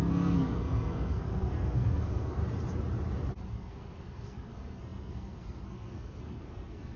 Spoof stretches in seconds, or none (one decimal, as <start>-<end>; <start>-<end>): 0.0-2.4; 3.5-7.0